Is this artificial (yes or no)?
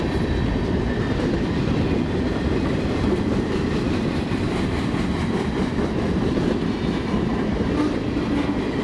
yes